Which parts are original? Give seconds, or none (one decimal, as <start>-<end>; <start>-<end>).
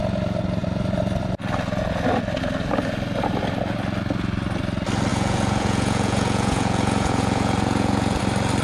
0.0-5.1; 8.2-8.6